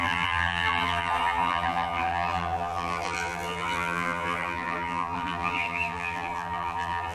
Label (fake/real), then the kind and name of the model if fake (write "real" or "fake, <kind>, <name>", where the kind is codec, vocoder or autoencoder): fake, vocoder, BigVGAN v2